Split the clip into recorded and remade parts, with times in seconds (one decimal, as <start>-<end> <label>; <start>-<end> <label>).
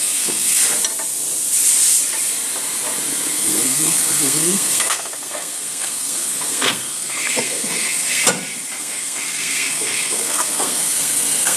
0.0-0.6 remade; 0.6-3.3 recorded; 3.3-8.2 remade; 8.2-8.8 recorded; 8.8-11.6 remade